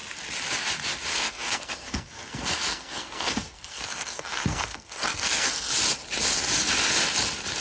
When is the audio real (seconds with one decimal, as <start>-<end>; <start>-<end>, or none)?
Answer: 0.0-1.1; 5.7-7.6